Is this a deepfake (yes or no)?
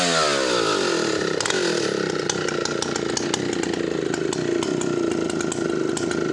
no